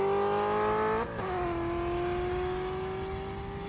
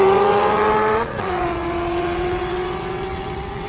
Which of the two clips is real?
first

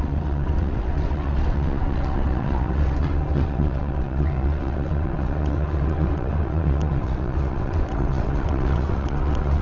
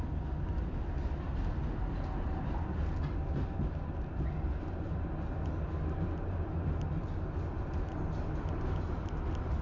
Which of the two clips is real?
second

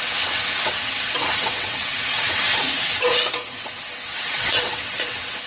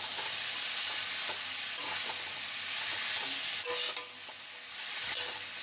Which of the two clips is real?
second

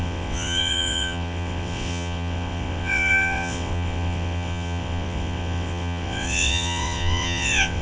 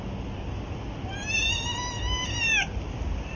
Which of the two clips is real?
second